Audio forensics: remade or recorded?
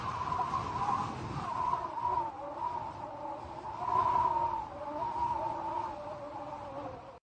recorded